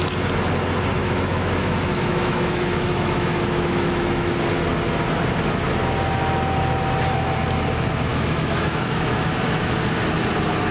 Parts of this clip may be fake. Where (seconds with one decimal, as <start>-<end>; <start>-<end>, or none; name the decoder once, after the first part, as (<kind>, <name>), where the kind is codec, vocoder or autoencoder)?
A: 1.0-4.3 (autoencoder, DAC-VAE); 8.1-9.7